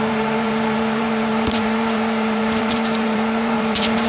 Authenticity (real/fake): fake